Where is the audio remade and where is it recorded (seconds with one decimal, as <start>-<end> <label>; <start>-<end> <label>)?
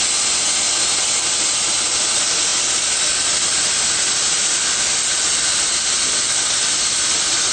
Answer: 0.0-7.5 recorded